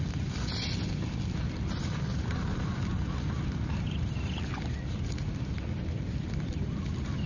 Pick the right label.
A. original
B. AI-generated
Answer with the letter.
A